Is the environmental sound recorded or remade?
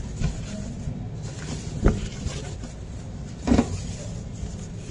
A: recorded